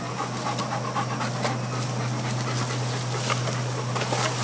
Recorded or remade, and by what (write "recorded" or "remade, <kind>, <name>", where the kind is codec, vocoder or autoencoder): recorded